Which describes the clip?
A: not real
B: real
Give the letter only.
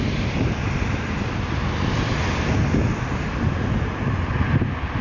B